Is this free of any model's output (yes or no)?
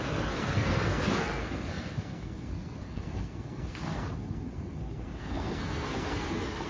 no